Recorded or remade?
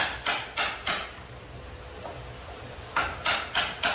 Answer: recorded